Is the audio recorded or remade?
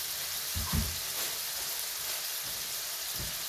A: recorded